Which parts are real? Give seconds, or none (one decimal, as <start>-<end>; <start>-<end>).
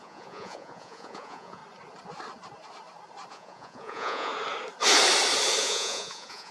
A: 1.6-3.3; 4.3-5.6